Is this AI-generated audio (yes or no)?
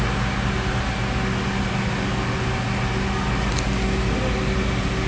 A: no